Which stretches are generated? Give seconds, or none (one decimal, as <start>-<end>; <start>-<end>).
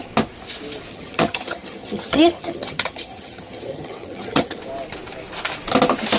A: 0.9-4.6